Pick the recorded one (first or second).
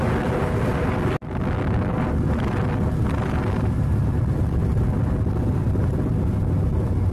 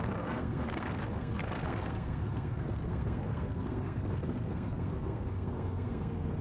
first